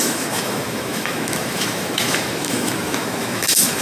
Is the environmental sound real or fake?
fake